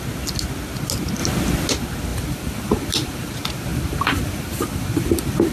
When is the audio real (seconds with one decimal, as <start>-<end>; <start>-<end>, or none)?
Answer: 0.0-2.1; 3.3-3.7